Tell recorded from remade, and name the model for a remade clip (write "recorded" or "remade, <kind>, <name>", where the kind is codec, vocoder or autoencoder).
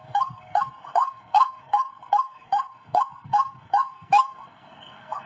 remade, codec, SNAC